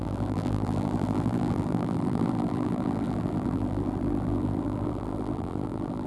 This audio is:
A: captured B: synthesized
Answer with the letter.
B